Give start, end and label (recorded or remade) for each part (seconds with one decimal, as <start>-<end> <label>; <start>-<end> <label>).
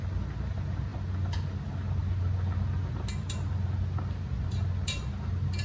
0.0-5.6 recorded